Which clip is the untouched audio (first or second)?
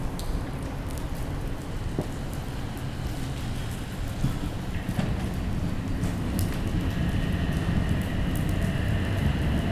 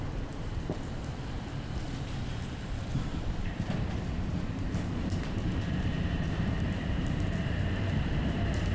first